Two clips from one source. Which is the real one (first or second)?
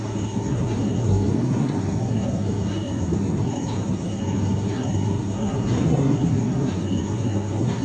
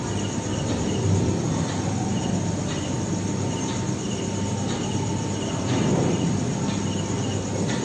second